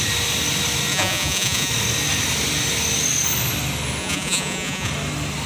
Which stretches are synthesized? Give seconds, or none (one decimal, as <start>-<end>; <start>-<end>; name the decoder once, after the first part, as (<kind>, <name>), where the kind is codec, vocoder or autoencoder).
0.9-1.7 (vocoder, Vocos); 4.0-4.9